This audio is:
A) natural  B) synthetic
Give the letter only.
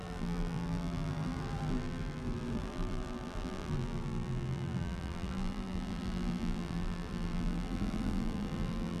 B